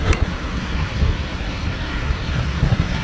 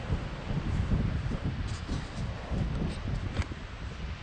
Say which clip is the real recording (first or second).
second